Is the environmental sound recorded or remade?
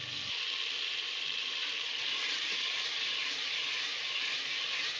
recorded